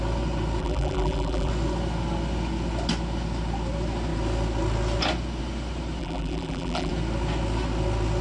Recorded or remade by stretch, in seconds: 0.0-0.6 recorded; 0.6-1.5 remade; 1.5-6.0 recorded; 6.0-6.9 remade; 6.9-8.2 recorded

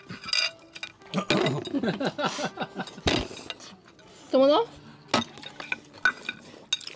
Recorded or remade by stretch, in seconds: 0.0-7.0 recorded

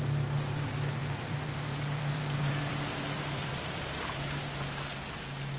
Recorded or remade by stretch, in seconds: 0.0-1.0 recorded; 1.0-4.4 remade; 4.4-5.6 recorded

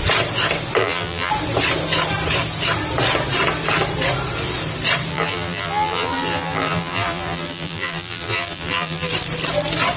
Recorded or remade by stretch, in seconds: 0.0-0.8 recorded; 0.8-1.3 remade; 1.3-5.1 recorded; 5.1-9.1 remade; 9.1-10.0 recorded

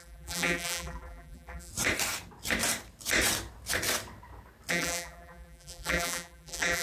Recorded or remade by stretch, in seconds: 0.0-1.7 remade; 1.7-4.7 recorded; 4.7-6.8 remade